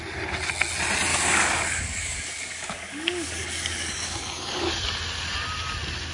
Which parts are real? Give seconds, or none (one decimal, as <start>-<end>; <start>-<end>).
0.0-1.1; 4.7-6.1